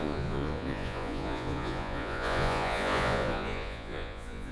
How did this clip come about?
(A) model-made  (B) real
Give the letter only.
A